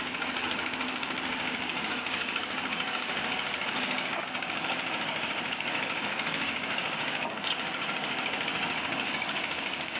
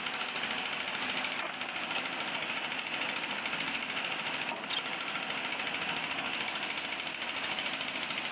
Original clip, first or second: second